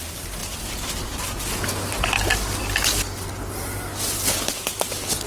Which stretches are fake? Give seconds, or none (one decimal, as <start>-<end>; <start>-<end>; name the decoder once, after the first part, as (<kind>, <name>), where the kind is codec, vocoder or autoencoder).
none